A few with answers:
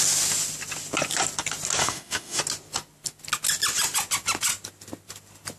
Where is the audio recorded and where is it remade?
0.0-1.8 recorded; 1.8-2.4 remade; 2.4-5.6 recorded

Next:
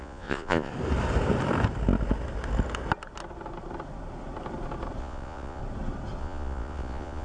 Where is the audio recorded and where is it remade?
0.0-0.7 remade; 0.7-5.0 recorded; 5.0-5.6 remade; 5.6-6.2 recorded; 6.2-7.2 remade

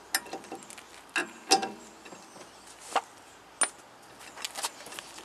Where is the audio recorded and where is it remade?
0.0-5.2 recorded

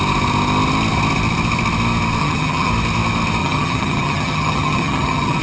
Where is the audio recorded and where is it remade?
0.0-2.2 recorded; 2.2-2.7 remade; 2.7-3.4 recorded; 3.4-5.4 remade

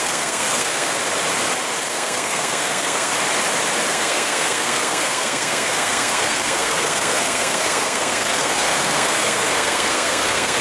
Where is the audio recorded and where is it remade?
0.0-1.0 remade; 1.0-1.9 recorded; 1.9-3.1 remade; 3.1-3.9 recorded; 3.9-10.6 remade

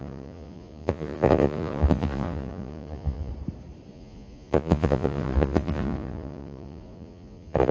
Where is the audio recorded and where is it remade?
0.0-3.3 remade; 3.3-3.9 recorded; 3.9-7.7 remade

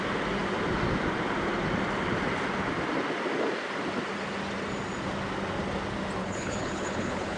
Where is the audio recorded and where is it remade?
0.0-6.2 recorded; 6.2-7.4 remade